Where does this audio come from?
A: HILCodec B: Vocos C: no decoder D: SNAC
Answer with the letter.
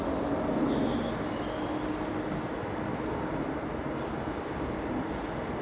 C